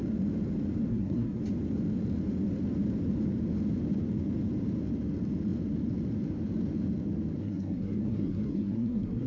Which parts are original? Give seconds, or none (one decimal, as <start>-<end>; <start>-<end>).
0.0-0.9; 1.4-7.4